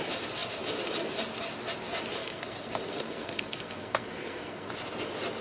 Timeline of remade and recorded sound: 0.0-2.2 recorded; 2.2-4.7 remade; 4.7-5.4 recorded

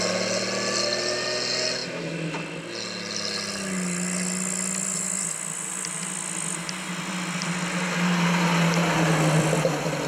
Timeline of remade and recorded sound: 0.0-10.1 recorded

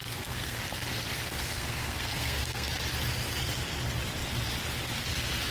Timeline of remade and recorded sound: 0.0-0.6 remade; 0.6-1.1 recorded; 1.1-2.7 remade; 2.7-5.5 recorded

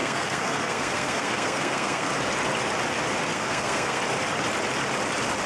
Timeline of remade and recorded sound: 0.0-2.1 remade; 2.1-3.3 recorded; 3.3-4.0 remade; 4.0-5.5 recorded

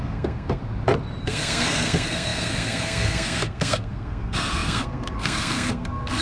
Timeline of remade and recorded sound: 0.0-0.6 remade; 0.6-1.2 recorded; 1.2-6.2 remade

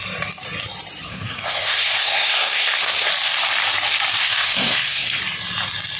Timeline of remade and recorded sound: 0.0-1.1 recorded; 1.1-3.1 remade; 3.1-4.2 recorded; 4.2-5.2 remade; 5.2-6.0 recorded